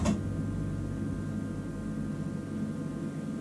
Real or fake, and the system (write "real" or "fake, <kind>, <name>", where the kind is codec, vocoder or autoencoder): real